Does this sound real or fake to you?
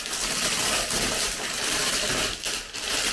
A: real